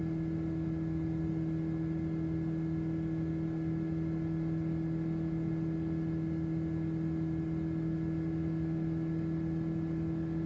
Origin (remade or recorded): recorded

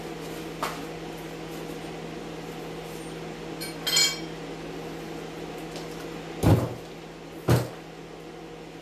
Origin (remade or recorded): recorded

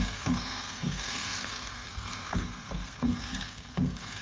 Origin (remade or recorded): remade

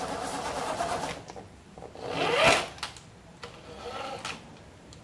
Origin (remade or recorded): recorded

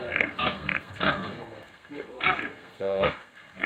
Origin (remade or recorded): remade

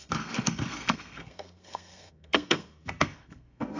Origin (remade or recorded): remade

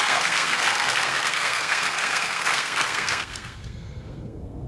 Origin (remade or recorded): remade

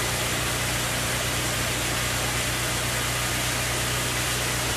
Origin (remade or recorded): recorded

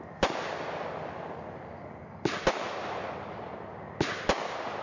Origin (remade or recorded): recorded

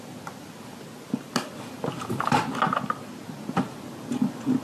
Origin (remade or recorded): recorded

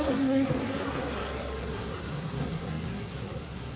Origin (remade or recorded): remade